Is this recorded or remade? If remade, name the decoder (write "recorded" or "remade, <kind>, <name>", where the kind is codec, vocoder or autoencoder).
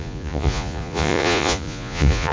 remade, vocoder, Vocos